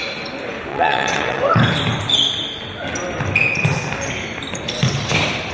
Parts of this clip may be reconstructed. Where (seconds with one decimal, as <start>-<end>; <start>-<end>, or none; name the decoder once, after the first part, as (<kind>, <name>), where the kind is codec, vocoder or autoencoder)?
0.7-1.4 (vocoder, WaveNeXt)